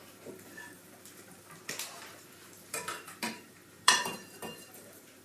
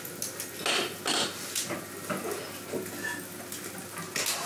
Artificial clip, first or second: first